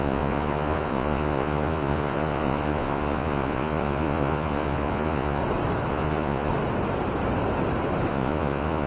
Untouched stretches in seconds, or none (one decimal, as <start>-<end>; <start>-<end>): 5.4-5.9; 6.5-8.1

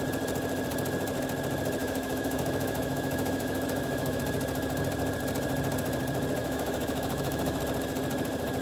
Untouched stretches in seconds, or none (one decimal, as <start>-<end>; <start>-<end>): 0.0-1.8; 4.2-6.4; 7.6-8.6

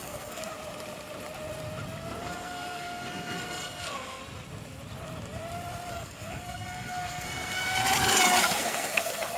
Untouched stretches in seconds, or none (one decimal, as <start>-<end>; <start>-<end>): 0.4-2.2; 4.2-5.9; 7.8-8.4